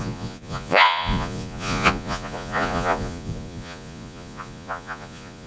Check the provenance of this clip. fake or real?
fake